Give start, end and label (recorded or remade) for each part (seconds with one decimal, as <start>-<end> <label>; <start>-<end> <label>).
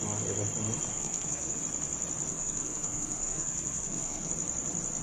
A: 0.0-0.9 recorded; 0.9-1.6 remade; 1.6-2.3 recorded; 2.3-4.3 remade; 4.3-5.0 recorded